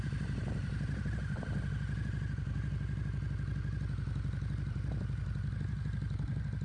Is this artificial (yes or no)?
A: no